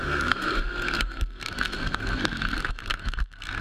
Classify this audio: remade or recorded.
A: remade